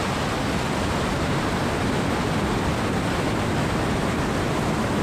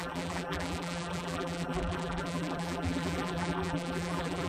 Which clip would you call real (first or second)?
first